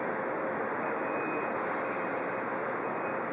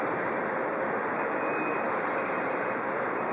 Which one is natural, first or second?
first